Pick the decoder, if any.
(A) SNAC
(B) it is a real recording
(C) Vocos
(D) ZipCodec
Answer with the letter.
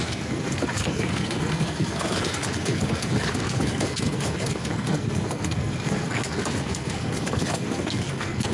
A